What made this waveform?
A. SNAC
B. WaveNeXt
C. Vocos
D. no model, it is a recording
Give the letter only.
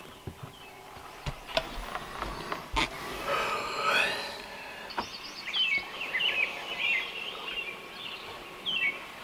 D